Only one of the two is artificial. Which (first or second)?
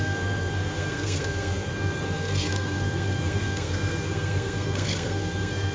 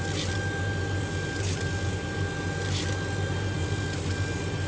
first